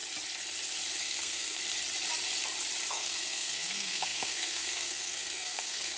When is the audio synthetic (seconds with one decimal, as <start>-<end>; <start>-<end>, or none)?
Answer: 1.0-1.6; 2.9-6.0